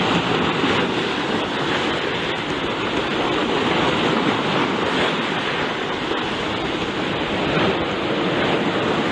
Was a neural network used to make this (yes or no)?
no